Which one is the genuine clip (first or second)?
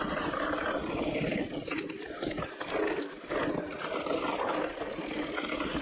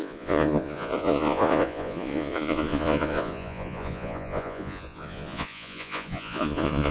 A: first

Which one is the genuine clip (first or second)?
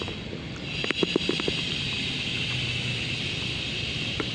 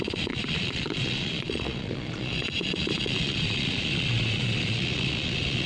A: first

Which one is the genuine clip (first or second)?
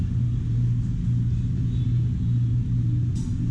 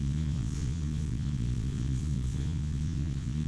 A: first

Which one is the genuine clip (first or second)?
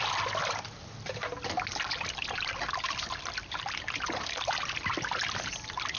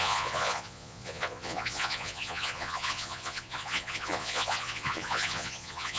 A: first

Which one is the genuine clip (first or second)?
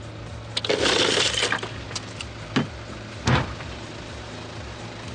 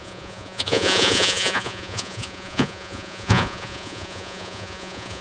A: first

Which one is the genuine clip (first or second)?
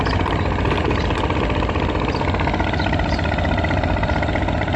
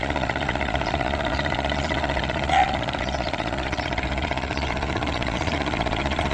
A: first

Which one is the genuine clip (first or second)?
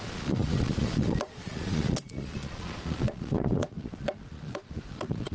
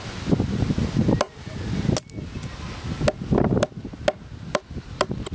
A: second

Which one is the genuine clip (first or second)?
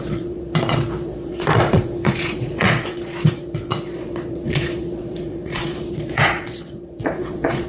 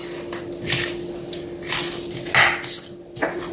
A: second